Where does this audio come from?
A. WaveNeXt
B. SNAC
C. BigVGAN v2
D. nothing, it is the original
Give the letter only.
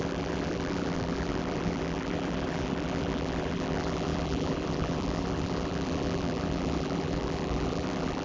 C